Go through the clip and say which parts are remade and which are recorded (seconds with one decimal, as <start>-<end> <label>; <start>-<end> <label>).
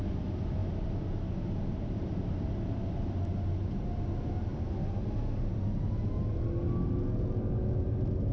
0.0-8.3 recorded